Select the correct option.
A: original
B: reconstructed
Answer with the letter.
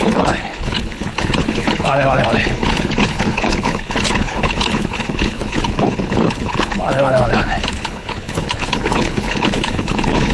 B